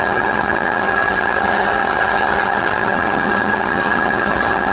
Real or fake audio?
fake